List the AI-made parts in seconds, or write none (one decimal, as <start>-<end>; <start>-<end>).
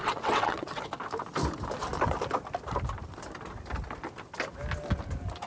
0.0-0.8